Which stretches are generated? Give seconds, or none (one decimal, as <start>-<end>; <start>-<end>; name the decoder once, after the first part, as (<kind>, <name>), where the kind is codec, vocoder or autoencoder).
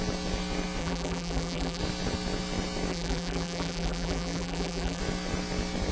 0.8-1.8 (vocoder, BigVGAN v2); 2.9-5.0